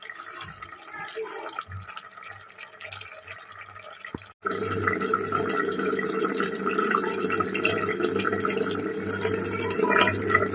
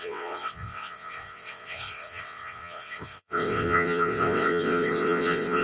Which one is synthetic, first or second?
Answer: second